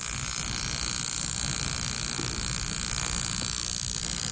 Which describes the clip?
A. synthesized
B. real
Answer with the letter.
B